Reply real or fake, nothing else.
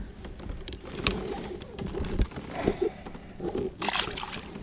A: fake